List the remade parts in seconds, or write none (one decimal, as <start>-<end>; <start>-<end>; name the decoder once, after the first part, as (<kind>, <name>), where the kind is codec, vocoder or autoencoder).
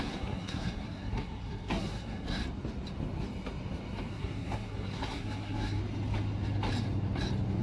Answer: 0.0-2.4 (codec, SNAC); 4.1-5.8